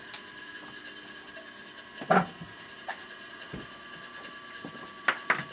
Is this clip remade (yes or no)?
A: no